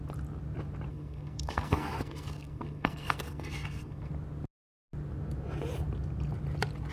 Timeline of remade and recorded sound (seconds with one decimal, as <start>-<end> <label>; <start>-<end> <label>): 0.0-0.9 recorded; 0.9-4.1 remade; 4.1-6.9 recorded